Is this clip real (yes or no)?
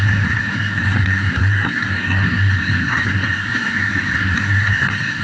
no